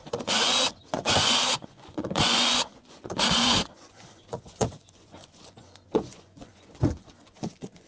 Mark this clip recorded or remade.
remade